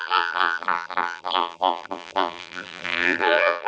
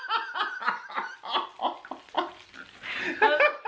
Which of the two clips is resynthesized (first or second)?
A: first